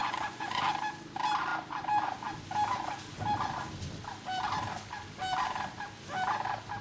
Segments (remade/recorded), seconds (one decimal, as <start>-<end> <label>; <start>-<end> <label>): 0.0-0.6 remade; 0.6-6.8 recorded